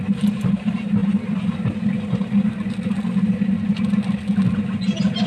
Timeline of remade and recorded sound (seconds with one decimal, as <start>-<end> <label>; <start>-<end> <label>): 0.0-5.3 recorded